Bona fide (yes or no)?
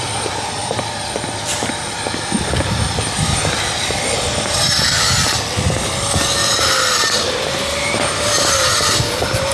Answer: no